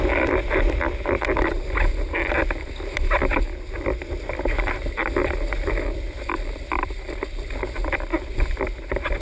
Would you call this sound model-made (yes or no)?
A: yes